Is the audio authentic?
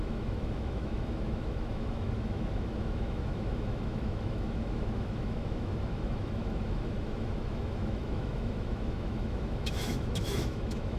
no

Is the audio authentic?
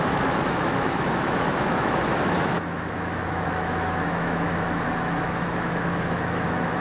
no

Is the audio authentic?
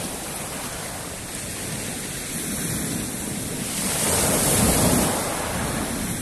yes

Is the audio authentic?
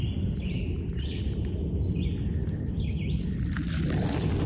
yes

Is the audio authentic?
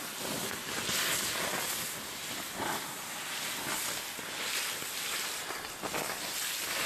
yes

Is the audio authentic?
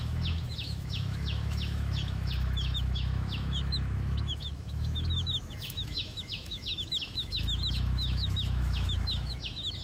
no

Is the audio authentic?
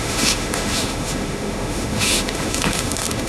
no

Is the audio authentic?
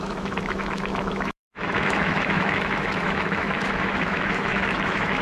no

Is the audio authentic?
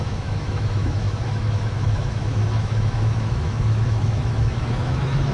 no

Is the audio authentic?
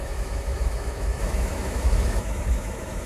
no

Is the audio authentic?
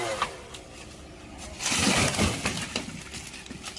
yes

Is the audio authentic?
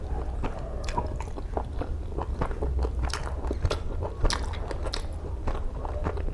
yes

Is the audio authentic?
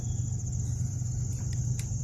yes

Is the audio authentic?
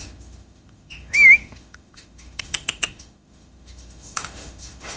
no